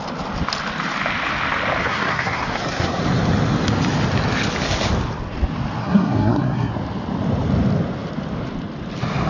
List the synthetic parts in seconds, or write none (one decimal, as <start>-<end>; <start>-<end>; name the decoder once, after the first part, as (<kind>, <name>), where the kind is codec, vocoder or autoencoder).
1.8-3.0 (codec, SNAC); 5.8-6.7